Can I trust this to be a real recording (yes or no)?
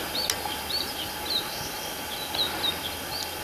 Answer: yes